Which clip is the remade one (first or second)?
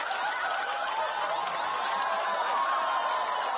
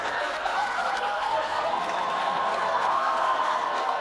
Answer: second